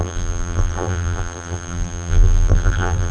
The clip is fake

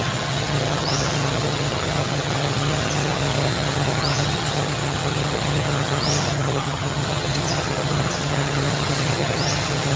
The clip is fake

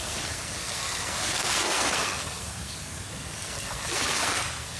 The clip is fake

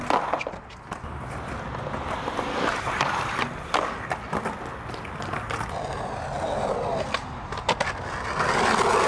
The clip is real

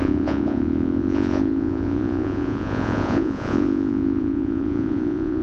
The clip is fake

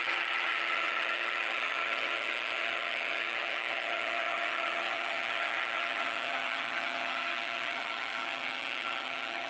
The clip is fake